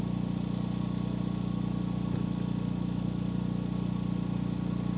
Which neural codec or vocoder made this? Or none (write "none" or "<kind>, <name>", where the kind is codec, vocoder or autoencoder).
none